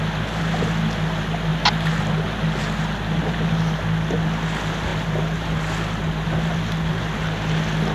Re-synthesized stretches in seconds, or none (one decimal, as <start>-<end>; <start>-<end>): none